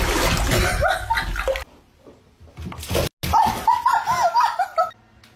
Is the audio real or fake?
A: real